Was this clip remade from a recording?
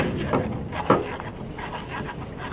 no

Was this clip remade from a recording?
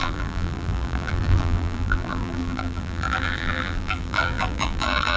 yes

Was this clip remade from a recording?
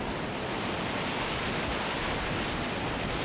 no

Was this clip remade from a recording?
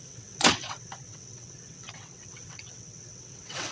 yes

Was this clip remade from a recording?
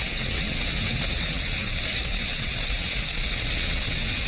yes